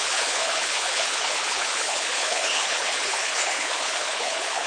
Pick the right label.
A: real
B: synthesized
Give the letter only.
B